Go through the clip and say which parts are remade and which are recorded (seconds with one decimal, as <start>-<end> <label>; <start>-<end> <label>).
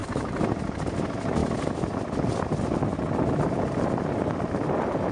0.0-5.1 recorded